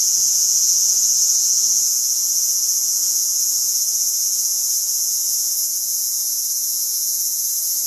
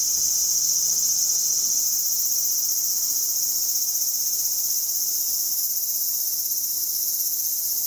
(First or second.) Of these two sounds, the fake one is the first